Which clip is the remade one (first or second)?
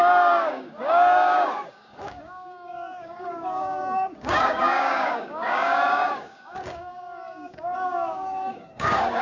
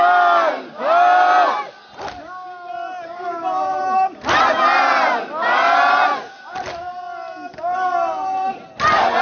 first